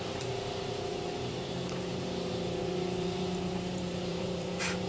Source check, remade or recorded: remade